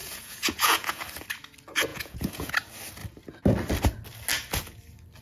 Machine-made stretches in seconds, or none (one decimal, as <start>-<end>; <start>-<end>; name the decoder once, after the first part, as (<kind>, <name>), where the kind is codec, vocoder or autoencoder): 0.0-1.0 (vocoder, Vocos); 1.9-2.5